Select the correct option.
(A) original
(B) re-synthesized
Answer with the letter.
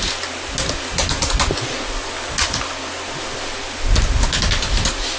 A